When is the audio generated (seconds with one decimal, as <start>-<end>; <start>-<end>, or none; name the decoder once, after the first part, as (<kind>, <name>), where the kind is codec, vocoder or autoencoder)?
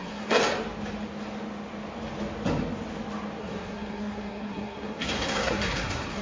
0.0-0.4 (codec, SNAC); 3.4-6.2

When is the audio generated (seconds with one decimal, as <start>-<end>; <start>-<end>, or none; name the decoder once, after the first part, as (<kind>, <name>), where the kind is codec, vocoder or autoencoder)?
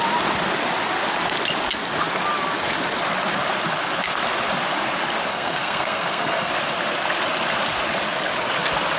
5.3-6.5 (codec, SNAC)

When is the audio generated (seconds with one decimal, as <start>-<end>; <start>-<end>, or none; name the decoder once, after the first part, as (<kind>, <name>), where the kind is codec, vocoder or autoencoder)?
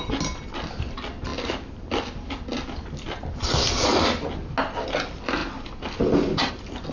none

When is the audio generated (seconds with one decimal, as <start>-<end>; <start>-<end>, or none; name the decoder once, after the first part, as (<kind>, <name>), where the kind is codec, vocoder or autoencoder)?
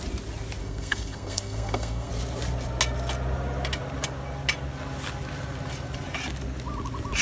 0.6-2.1 (codec, SNAC)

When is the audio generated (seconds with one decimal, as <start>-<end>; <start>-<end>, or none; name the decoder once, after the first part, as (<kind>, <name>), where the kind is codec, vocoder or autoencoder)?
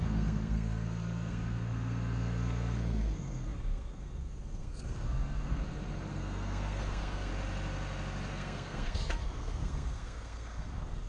0.0-5.6 (codec, SNAC); 6.1-7.3; 8.3-11.1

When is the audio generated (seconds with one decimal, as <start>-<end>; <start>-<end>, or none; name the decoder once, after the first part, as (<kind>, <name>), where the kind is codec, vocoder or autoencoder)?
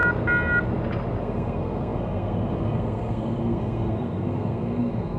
1.2-5.2 (codec, SNAC)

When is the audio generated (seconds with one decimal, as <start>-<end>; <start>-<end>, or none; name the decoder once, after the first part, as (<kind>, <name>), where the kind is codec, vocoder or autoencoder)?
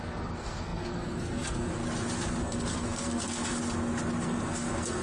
0.0-1.8 (codec, SNAC); 2.4-3.6; 4.2-5.0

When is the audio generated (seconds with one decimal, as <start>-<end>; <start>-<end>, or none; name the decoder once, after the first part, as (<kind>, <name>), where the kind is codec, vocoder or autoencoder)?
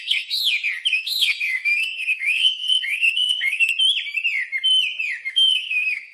0.0-0.4 (codec, SNAC); 0.9-3.7; 5.3-6.1